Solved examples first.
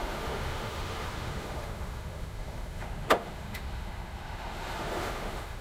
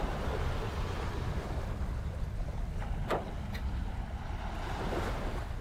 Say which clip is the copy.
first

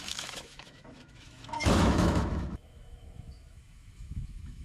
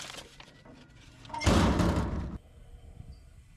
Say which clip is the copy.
first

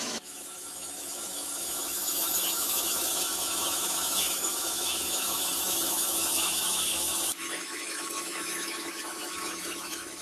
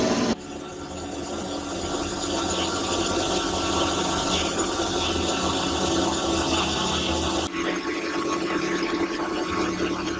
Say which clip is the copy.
first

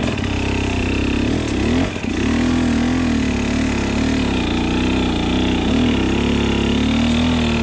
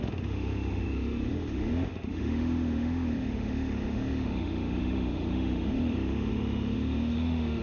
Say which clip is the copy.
second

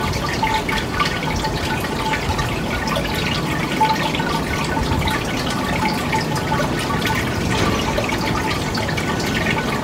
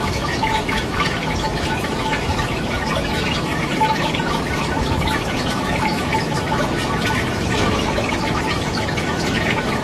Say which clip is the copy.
second